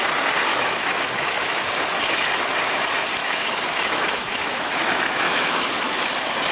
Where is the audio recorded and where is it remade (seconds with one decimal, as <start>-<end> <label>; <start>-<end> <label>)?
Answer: 0.0-0.5 recorded; 0.5-1.7 remade; 1.7-3.2 recorded; 3.2-5.6 remade; 5.6-6.5 recorded